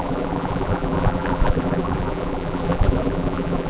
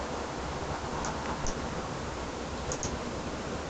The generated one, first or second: first